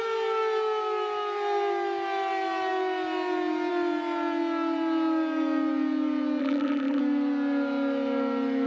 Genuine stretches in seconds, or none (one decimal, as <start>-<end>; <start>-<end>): 0.0-6.4; 7.0-8.7